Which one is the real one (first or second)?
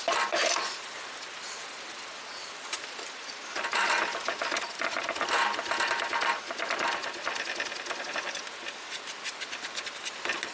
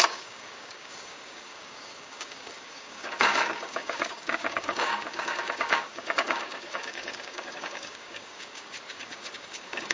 first